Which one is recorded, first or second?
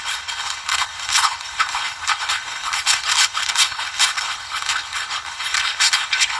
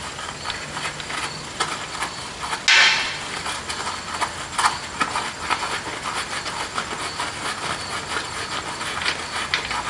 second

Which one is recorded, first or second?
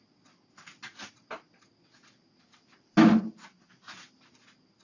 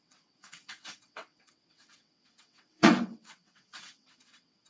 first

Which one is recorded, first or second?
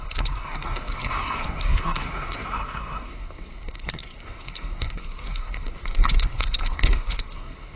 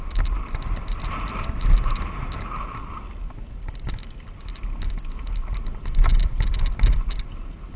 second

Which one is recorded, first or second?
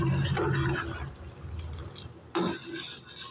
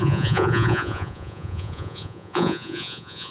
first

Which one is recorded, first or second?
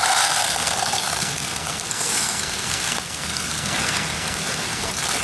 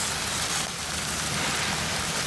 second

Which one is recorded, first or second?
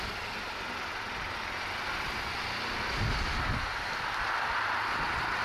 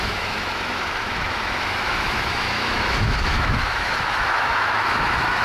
first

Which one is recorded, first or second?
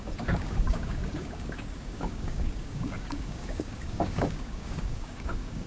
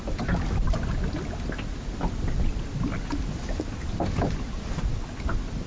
second